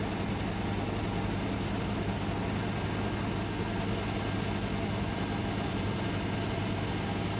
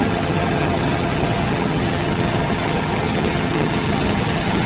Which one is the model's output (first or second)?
second